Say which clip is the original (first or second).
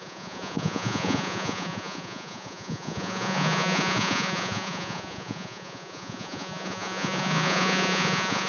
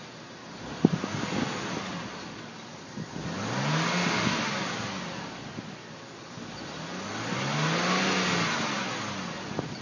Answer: second